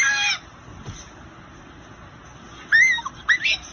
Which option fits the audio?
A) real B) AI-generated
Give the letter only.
A